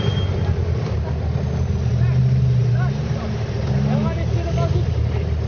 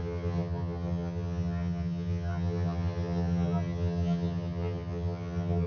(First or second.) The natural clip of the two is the first